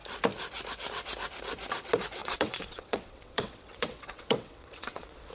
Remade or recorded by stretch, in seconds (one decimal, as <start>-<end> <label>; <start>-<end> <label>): 0.0-2.2 recorded; 2.2-5.3 remade